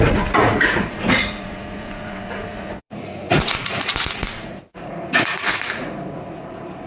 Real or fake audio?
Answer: fake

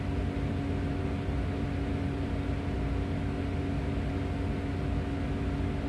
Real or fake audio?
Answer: real